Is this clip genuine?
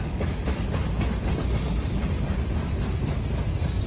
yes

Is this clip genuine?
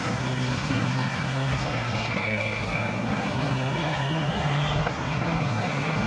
no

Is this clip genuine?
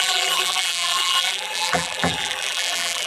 no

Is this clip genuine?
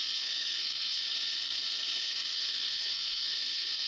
no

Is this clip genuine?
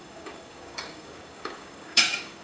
no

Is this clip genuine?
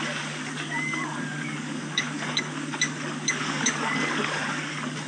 no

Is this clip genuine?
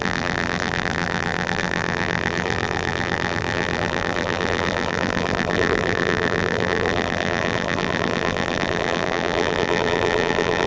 no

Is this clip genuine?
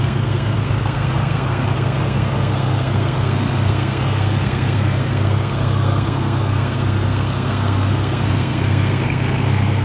no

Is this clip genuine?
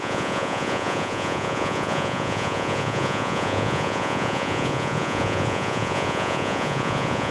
no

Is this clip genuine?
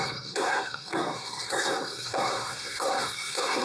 no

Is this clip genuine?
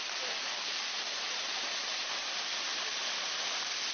yes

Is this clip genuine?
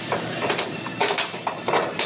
no